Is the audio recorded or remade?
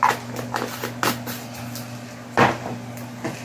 recorded